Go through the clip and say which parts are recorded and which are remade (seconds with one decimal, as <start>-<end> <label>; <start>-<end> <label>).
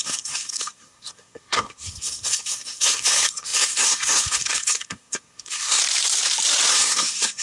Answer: 0.0-5.8 remade; 5.8-6.7 recorded; 6.7-7.4 remade